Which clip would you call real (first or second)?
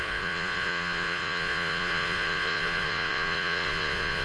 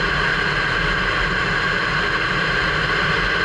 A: second